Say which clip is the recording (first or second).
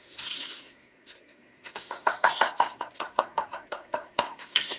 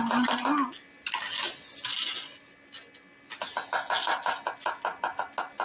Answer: second